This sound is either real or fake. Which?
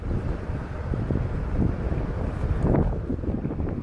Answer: real